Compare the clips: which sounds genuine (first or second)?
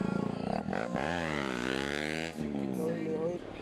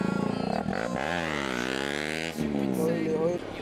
second